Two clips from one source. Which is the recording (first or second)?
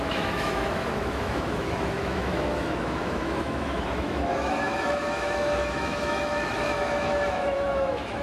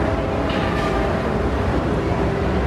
second